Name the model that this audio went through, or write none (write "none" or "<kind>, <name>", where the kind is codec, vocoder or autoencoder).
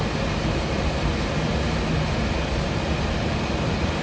none